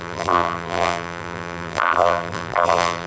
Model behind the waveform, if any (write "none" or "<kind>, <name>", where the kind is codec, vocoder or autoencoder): vocoder, BigVGAN v2